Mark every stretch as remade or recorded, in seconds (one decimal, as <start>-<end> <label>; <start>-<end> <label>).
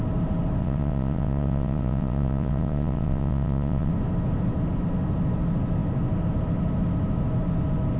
0.0-0.6 recorded; 0.6-3.9 remade; 3.9-8.0 recorded